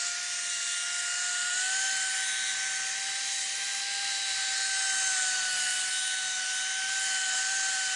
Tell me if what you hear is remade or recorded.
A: recorded